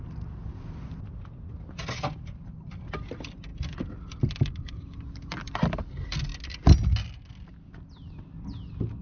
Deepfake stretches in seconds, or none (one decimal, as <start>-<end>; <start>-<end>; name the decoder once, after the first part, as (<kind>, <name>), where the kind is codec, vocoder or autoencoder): none